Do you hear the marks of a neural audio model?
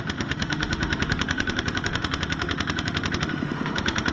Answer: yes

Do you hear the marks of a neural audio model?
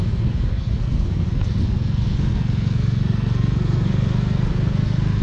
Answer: yes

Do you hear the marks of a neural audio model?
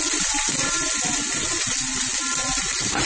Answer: no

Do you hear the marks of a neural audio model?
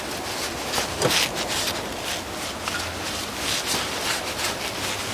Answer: no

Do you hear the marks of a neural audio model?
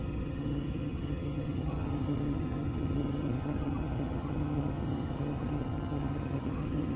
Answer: yes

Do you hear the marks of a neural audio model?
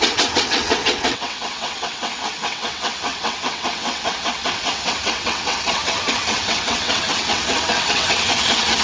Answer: yes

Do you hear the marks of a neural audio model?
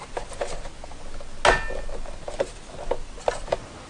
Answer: no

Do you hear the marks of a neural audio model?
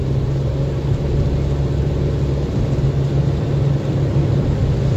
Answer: no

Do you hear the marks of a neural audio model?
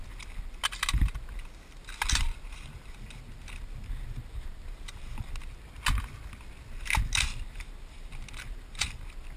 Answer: no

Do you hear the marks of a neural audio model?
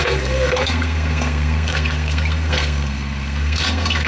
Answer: yes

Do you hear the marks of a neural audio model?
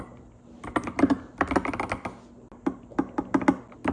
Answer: no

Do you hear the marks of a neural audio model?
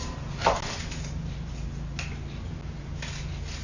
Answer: no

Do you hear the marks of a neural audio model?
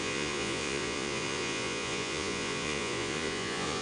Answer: yes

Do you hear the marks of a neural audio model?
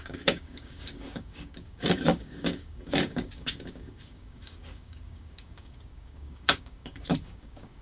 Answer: yes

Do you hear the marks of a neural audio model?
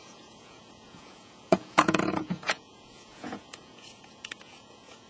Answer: yes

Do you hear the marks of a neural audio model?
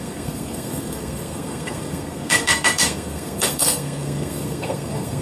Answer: yes